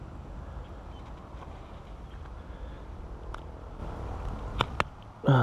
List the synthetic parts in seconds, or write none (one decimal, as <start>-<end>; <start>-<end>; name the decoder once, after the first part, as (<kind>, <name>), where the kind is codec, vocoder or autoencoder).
none